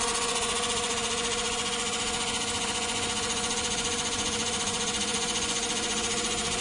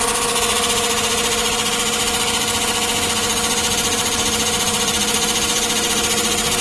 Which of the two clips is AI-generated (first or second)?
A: first